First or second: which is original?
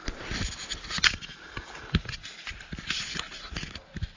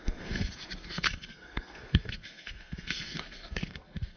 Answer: first